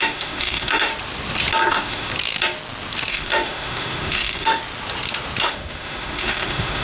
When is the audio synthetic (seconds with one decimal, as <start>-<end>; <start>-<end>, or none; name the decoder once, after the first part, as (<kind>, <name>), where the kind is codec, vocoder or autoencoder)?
0.0-0.9 (autoencoder, DAC-VAE); 1.7-2.1; 3.1-4.6; 5.4-6.8